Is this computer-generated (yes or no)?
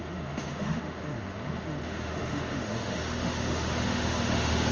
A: yes